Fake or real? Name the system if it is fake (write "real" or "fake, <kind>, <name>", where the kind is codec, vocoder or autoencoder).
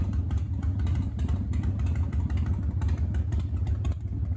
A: real